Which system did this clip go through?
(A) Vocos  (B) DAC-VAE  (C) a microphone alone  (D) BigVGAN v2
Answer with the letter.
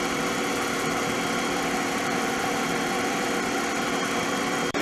D